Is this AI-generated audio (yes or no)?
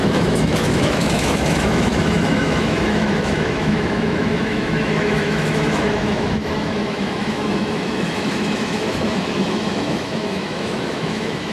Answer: yes